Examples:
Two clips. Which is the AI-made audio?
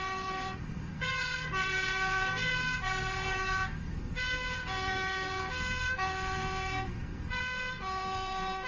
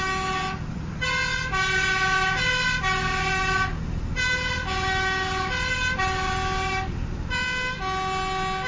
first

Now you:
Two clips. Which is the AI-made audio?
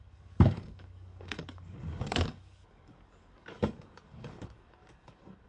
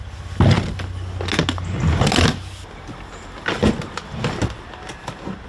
first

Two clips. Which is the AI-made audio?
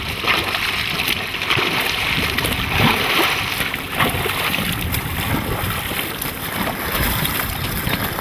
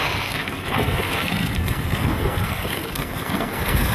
second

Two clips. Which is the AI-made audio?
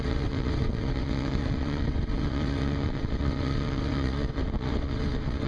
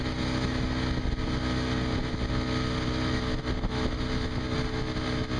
first